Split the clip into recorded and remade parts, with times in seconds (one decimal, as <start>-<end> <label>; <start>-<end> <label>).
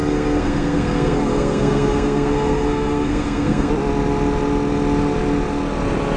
0.0-3.7 remade; 3.7-6.2 recorded